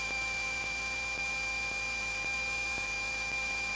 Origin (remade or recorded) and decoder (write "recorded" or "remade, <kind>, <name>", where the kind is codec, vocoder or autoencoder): remade, autoencoder, DAC-VAE